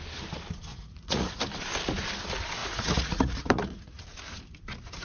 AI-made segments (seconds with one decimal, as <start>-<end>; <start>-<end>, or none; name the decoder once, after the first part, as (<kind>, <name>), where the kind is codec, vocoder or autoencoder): 0.7-1.4 (vocoder, Vocos); 2.6-4.0